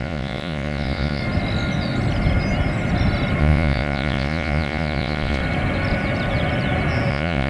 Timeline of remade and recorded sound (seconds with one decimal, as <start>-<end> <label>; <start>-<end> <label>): 0.0-1.2 remade; 1.2-3.4 recorded; 3.4-5.4 remade; 5.4-7.1 recorded; 7.1-7.5 remade